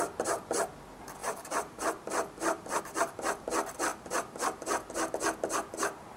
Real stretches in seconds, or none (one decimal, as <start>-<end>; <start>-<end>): 0.0-1.2; 2.8-3.9; 5.1-6.2